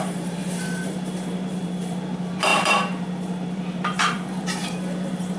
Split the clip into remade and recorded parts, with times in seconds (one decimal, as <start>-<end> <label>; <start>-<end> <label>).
0.0-5.4 remade